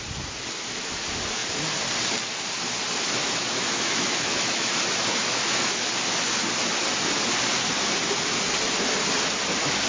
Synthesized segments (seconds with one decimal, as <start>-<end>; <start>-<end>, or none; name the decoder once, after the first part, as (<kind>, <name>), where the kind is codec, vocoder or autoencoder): 3.2-5.9 (autoencoder, DAC-VAE)